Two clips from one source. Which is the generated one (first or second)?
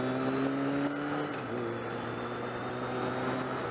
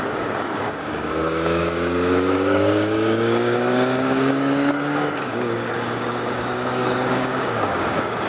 second